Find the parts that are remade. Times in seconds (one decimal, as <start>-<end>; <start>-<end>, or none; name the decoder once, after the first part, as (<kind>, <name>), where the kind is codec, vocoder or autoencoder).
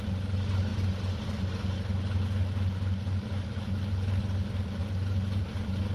none